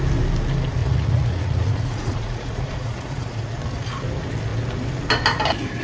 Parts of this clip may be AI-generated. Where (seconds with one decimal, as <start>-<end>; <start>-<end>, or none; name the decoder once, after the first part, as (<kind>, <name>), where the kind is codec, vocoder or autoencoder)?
0.8-3.6 (vocoder, Vocos)